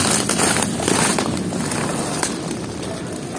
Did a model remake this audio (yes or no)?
no